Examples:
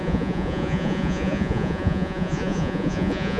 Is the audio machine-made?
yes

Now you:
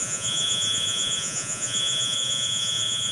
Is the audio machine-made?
yes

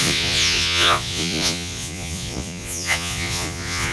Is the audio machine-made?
yes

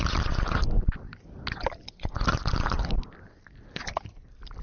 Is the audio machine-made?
no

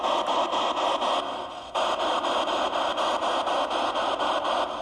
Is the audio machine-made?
no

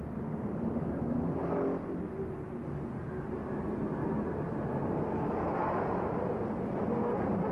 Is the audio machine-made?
no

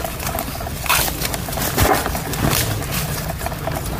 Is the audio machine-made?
no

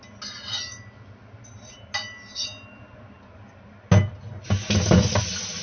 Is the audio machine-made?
no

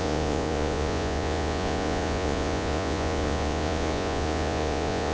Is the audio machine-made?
yes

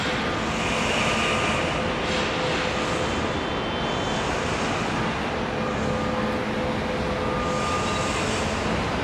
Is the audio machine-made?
no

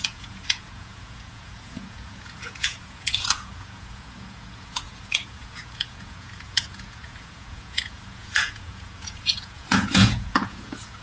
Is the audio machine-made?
yes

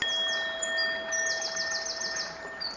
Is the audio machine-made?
no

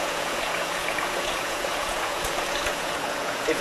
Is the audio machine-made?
yes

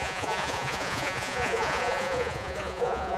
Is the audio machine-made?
yes